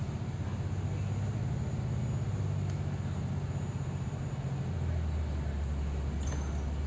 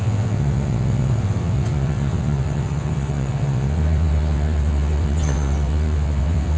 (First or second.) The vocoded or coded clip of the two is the second